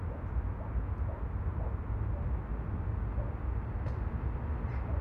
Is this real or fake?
real